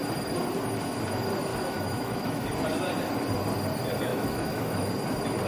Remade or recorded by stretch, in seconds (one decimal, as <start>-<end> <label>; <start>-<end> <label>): 0.0-1.5 recorded; 1.5-2.5 remade; 2.5-4.1 recorded; 4.1-4.9 remade; 4.9-5.5 recorded